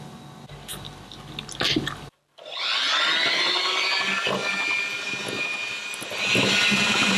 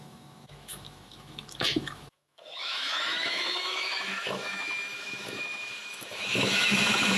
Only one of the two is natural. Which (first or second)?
first